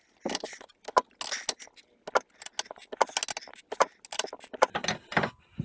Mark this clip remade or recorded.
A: recorded